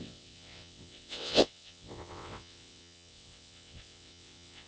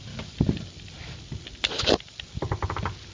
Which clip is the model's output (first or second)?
first